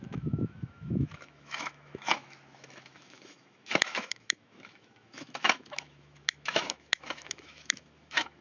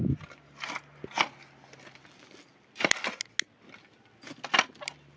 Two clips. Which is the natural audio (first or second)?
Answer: second